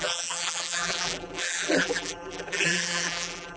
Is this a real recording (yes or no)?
no